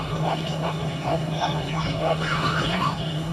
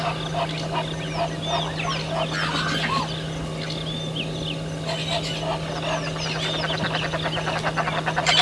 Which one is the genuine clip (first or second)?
second